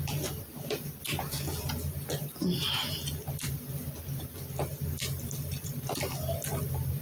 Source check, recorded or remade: recorded